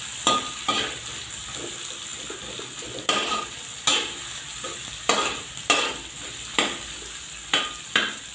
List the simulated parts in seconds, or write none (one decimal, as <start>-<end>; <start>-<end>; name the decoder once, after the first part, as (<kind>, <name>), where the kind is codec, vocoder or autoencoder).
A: none